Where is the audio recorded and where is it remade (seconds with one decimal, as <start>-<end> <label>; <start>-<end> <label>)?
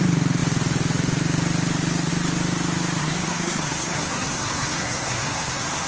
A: 0.0-3.0 recorded; 3.0-5.9 remade